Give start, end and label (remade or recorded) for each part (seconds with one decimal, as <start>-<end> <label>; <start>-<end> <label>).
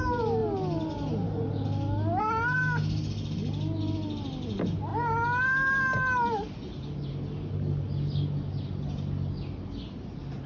0.0-10.5 recorded